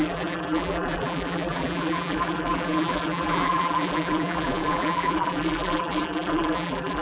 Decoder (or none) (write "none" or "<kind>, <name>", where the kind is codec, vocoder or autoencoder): vocoder, BigVGAN v2